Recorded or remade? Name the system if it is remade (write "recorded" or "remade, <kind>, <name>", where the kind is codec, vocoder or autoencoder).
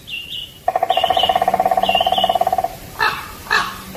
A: remade, vocoder, BigVGAN v2